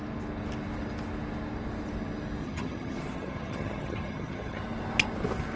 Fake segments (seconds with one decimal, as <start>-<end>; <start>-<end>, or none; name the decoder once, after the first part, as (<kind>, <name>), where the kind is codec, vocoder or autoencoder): 2.4-4.6 (vocoder, HiFi-GAN)